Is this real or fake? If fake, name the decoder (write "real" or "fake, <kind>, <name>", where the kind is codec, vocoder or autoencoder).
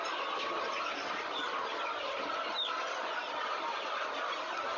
real